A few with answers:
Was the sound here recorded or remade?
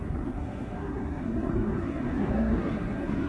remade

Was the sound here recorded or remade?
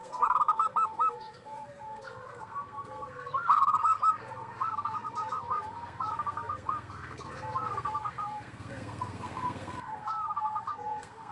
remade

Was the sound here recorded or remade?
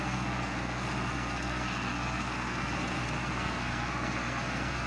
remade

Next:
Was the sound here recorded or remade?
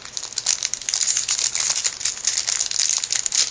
recorded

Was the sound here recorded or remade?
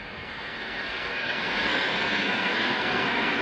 remade